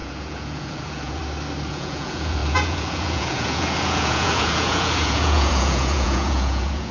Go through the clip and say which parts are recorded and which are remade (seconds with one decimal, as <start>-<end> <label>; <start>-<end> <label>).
0.0-1.2 remade; 1.2-1.7 recorded; 1.7-6.9 remade